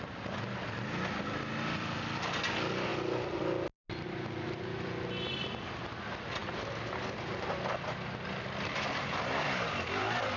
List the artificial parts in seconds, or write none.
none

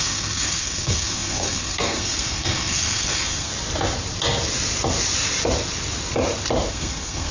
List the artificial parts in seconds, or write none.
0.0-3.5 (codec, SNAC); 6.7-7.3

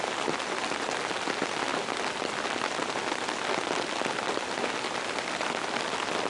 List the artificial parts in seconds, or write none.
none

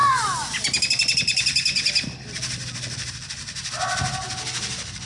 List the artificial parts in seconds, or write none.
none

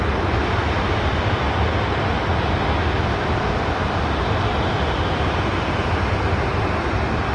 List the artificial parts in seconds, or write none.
none

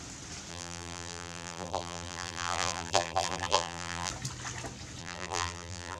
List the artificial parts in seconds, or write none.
0.5-4.1 (vocoder, BigVGAN v2); 5.0-6.0